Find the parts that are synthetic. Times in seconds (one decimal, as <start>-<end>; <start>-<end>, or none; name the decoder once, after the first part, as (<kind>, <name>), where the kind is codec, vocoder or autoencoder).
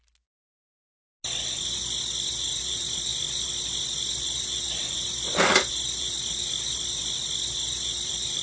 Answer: none